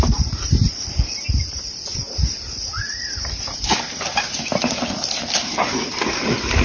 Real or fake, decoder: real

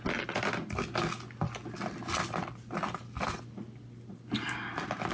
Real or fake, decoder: real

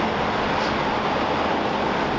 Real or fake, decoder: real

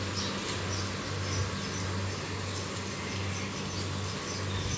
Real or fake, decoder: real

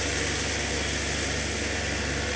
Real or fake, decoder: real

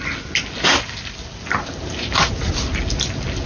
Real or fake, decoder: real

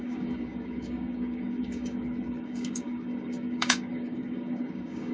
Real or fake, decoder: fake, codec, DAC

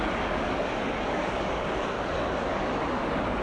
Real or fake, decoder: fake, codec, DAC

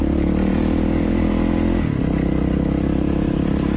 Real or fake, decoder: real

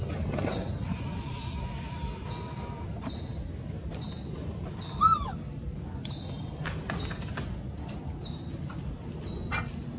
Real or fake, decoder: real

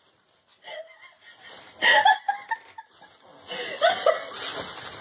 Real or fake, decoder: real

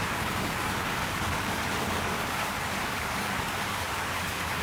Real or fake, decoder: fake, codec, DAC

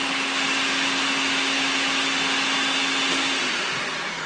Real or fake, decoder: real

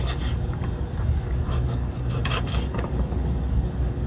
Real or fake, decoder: fake, codec, DAC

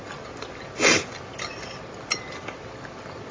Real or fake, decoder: real